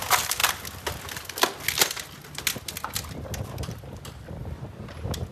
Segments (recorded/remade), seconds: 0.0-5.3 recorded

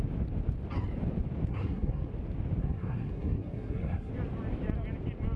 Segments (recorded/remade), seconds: 0.0-1.5 recorded; 1.5-2.1 remade; 2.1-2.6 recorded; 2.6-4.1 remade; 4.1-5.4 recorded

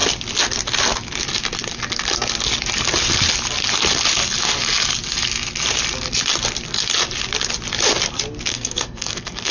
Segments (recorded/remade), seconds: 0.0-8.5 recorded; 8.5-9.5 remade

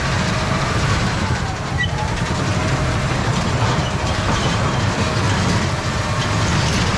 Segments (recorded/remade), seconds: 0.0-5.1 remade; 5.1-7.0 recorded

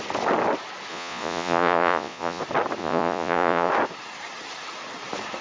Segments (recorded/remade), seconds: 0.0-0.9 recorded; 0.9-2.4 remade; 2.4-2.8 recorded; 2.8-3.7 remade; 3.7-5.4 recorded

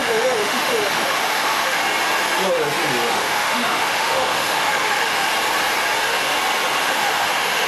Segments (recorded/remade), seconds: 0.0-1.8 remade; 1.8-3.1 recorded; 3.1-5.3 remade; 5.3-6.8 recorded; 6.8-7.7 remade